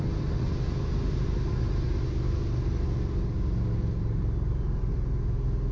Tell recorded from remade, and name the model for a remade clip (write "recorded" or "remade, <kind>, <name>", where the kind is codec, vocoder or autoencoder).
recorded